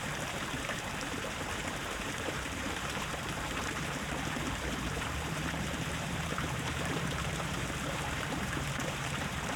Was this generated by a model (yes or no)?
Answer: yes